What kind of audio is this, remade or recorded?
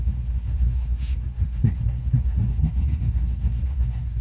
remade